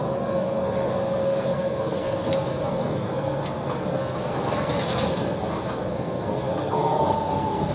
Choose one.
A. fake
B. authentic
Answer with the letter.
A